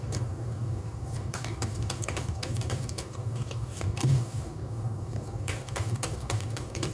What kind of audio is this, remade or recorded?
remade